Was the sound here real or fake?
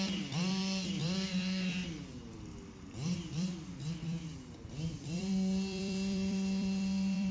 fake